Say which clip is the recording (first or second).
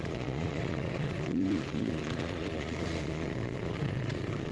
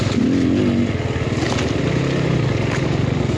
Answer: second